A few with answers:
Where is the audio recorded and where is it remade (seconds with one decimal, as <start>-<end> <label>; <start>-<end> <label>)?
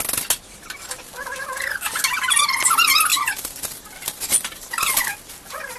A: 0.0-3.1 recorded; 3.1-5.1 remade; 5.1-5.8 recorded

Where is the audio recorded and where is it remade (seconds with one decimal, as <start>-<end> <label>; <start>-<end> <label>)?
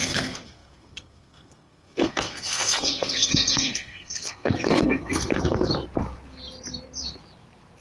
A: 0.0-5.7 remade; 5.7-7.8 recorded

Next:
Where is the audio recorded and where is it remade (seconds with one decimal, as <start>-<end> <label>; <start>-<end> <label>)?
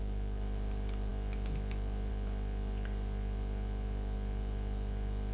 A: 0.0-5.3 recorded